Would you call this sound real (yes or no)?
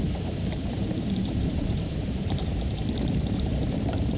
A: no